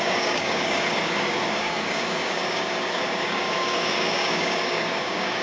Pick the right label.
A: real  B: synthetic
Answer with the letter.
B